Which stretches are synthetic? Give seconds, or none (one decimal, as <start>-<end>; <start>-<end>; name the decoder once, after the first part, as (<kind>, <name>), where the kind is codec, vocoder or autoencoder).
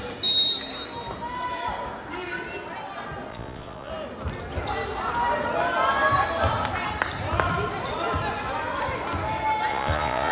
3.3-3.9 (vocoder, Vocos); 9.7-10.3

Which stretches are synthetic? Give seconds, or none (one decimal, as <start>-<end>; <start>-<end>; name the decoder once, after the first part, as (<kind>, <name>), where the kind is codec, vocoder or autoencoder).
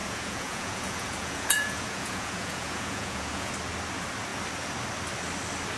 0.0-3.5 (vocoder, Vocos)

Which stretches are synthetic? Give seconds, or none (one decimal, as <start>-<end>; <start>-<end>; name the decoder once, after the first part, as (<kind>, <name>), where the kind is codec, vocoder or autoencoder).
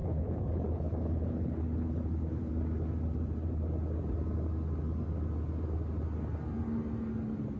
0.0-2.5 (codec, HILCodec)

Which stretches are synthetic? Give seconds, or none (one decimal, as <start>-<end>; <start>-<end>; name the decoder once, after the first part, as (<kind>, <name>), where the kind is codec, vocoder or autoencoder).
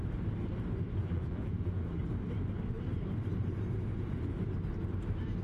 1.0-2.0 (vocoder, BigVGAN v2)